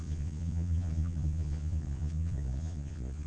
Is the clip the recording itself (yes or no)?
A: no